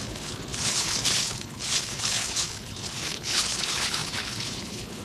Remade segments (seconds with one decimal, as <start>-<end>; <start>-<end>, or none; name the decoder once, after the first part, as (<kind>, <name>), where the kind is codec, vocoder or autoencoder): 0.0-5.0 (codec, HILCodec)